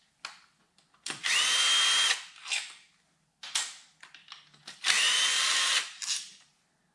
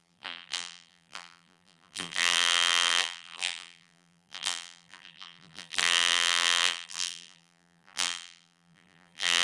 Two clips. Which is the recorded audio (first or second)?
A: first